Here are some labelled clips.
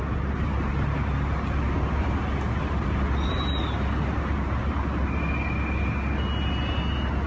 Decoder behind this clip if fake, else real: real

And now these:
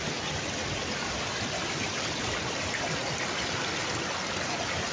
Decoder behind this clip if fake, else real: real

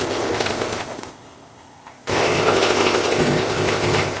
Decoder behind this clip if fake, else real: fake, codec, ZipCodec